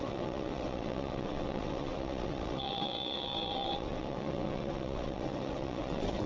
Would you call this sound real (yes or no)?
no